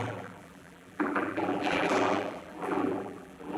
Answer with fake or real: fake